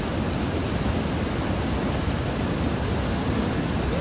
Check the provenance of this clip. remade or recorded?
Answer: recorded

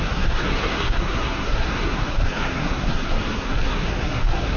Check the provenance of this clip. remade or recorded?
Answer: remade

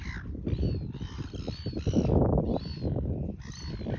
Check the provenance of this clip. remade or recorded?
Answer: remade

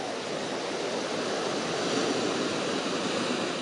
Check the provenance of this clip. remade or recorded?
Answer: recorded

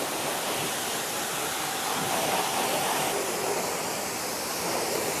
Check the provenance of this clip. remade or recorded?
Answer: remade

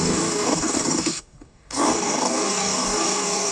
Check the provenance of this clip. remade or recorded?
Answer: remade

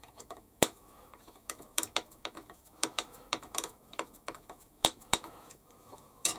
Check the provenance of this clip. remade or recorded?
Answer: remade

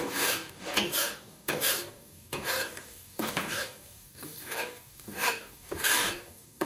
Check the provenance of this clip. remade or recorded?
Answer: remade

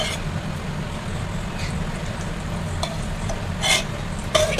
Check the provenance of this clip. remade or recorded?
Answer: remade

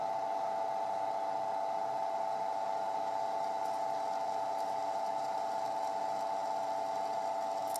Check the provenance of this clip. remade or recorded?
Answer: recorded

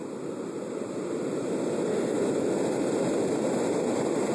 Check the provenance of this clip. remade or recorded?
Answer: recorded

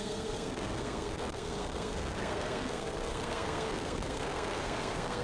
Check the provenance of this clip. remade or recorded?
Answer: remade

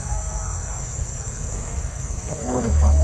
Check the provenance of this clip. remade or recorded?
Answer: remade